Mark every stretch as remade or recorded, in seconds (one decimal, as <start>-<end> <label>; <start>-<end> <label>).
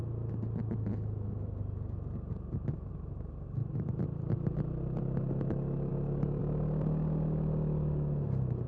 0.0-8.7 recorded